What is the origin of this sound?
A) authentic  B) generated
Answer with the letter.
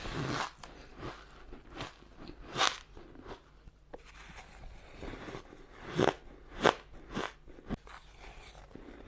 A